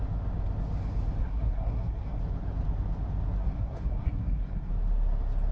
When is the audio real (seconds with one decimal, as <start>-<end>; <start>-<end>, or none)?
0.0-1.2; 2.2-3.4; 4.7-5.5